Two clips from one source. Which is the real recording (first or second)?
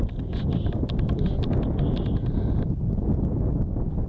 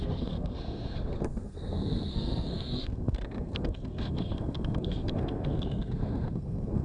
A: first